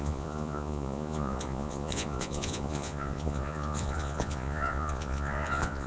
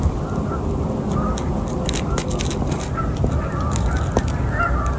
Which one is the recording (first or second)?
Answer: second